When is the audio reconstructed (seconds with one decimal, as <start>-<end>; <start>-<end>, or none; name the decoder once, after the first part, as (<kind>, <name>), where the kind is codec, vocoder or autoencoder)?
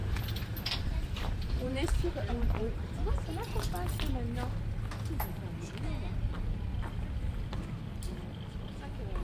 0.0-3.1 (vocoder, BigVGAN v2)